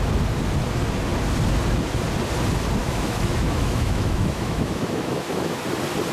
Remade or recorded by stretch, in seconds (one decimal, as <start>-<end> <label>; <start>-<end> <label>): 0.0-2.8 recorded; 2.8-5.6 remade; 5.6-6.1 recorded